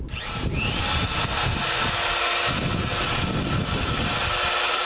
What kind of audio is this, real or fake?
real